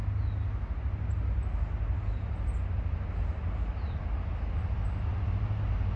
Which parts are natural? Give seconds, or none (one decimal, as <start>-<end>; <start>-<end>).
0.0-6.0

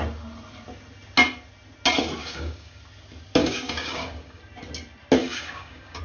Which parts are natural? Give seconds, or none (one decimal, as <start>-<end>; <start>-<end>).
0.0-2.2; 2.8-3.4; 4.4-5.2